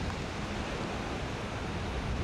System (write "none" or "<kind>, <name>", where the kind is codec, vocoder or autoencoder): none